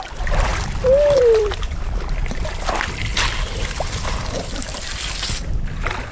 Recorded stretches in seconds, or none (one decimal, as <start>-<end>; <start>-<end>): 0.0-0.5; 2.7-3.1; 5.6-6.1

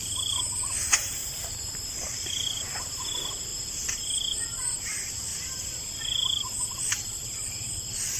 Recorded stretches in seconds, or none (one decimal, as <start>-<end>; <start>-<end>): 1.2-1.9

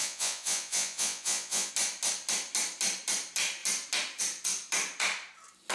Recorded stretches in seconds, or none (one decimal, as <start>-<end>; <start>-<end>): 1.7-5.7

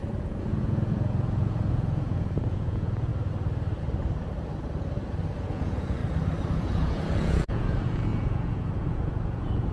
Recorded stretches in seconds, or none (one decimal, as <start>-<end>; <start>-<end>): 3.1-5.4; 6.0-6.6

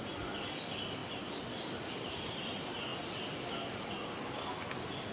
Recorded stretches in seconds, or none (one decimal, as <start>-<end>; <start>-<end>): 0.0-1.0; 2.3-5.1

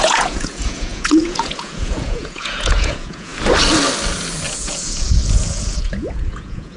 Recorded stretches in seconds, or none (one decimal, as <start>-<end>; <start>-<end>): 3.3-4.5